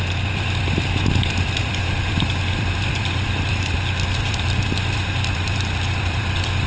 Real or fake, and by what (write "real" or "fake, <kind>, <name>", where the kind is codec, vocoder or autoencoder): fake, vocoder, BigVGAN v2